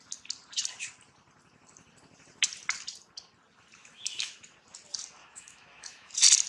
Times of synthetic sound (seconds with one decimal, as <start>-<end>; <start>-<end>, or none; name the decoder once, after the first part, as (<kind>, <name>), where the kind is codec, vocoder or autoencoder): 3.8-4.3 (autoencoder, DAC-VAE); 5.2-6.1